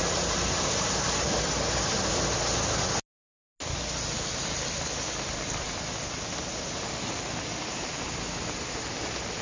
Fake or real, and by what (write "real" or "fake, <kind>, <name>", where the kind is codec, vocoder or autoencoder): real